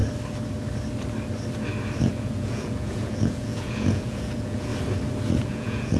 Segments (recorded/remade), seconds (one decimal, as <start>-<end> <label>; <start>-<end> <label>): 0.0-2.1 recorded; 2.1-4.7 remade; 4.7-5.3 recorded; 5.3-6.0 remade